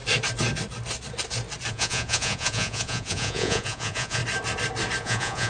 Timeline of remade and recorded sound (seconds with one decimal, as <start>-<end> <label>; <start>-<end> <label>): 0.0-1.7 recorded; 1.7-4.2 remade; 4.2-5.0 recorded; 5.0-5.5 remade